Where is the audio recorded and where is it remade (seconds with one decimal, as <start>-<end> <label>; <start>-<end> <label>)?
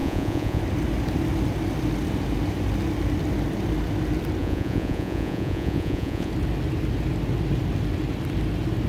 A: 0.0-0.6 remade; 0.6-4.4 recorded; 4.4-6.3 remade; 6.3-8.9 recorded